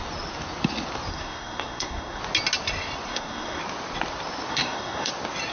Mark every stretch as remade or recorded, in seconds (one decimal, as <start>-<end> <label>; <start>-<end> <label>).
0.0-1.1 recorded; 1.1-2.2 remade; 2.2-3.1 recorded; 3.1-3.6 remade; 3.6-4.5 recorded; 4.5-5.1 remade; 5.1-5.5 recorded